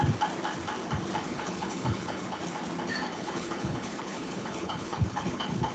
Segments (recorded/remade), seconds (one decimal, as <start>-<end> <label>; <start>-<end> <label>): 0.0-1.2 recorded; 1.2-2.4 remade; 2.4-3.1 recorded; 3.1-5.7 remade